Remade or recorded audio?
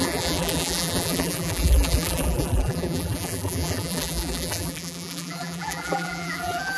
remade